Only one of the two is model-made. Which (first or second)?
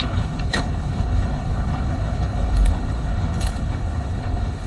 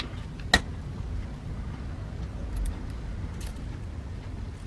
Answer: first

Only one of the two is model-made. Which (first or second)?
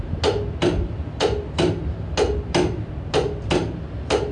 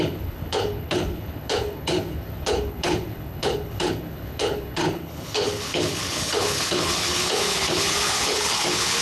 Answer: second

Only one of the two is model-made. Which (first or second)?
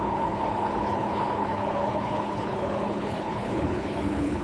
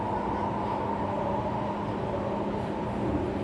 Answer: first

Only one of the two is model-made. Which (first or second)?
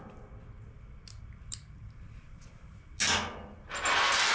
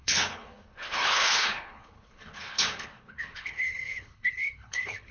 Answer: second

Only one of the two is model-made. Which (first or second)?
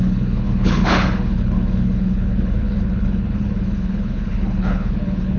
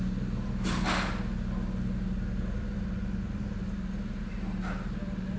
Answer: first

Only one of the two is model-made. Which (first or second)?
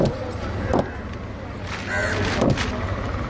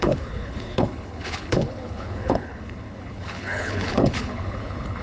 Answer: second